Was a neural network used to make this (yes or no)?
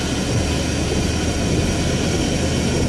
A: no